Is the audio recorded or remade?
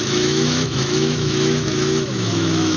remade